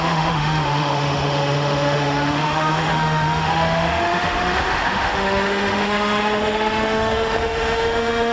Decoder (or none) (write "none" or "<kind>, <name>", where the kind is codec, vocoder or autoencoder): autoencoder, DAC-VAE